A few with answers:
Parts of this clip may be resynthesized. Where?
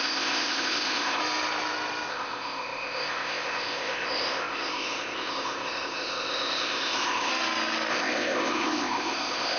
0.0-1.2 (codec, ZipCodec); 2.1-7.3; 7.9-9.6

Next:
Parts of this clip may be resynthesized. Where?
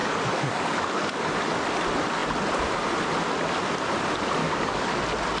0.0-1.3 (codec, DAC); 4.4-5.0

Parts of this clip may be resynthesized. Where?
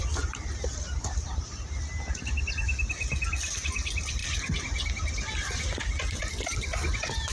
none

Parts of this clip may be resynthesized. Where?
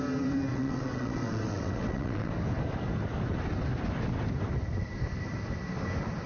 0.5-2.3 (vocoder, WaveNeXt)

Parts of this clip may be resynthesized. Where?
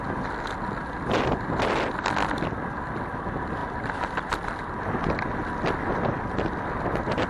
none